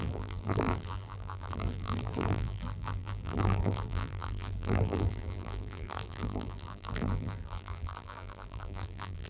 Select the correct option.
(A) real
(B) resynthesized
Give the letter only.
B